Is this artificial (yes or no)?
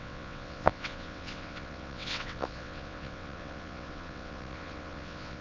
yes